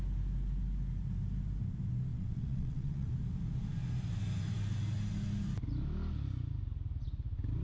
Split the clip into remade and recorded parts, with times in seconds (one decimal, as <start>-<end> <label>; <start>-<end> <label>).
0.0-2.1 recorded; 2.1-3.1 remade; 3.1-7.6 recorded